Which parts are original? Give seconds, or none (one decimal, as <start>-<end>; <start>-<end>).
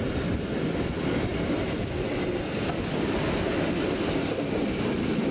0.0-5.3